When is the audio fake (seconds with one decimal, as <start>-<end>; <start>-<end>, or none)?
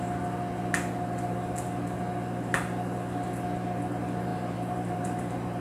4.3-5.6